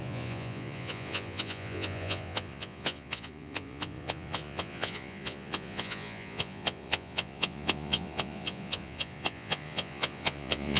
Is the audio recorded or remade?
remade